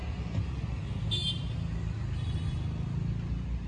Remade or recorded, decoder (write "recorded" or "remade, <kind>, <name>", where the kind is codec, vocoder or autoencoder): recorded